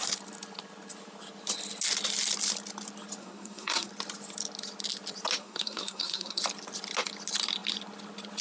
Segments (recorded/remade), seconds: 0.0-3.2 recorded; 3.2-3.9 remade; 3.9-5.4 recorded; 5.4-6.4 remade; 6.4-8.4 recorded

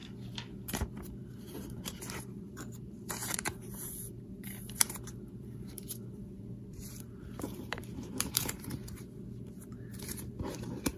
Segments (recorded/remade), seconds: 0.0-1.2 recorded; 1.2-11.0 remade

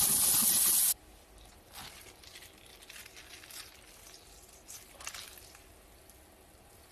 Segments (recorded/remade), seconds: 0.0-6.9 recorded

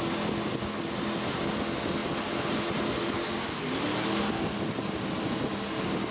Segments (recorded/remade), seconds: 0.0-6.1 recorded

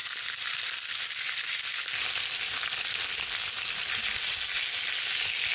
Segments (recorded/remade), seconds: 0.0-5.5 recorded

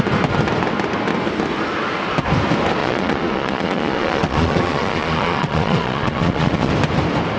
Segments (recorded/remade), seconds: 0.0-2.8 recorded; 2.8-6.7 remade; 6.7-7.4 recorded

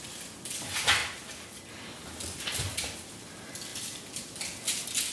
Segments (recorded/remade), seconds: 0.0-5.1 recorded

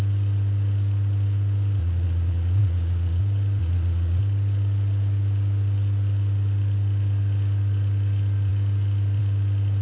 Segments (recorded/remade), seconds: 0.0-1.8 recorded; 1.8-3.2 remade; 3.2-3.6 recorded; 3.6-4.2 remade; 4.2-9.8 recorded